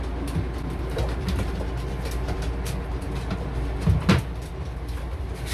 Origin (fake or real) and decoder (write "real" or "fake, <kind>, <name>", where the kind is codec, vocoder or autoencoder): real